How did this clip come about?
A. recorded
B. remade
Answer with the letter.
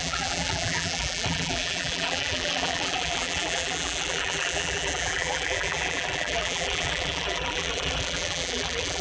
B